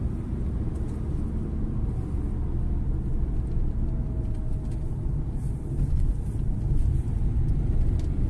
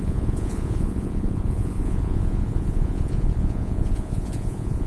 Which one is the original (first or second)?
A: first